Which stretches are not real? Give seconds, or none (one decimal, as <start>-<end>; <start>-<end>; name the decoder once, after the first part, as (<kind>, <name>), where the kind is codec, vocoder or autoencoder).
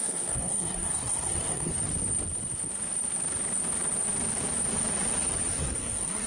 0.0-1.7 (codec, SNAC); 5.5-6.3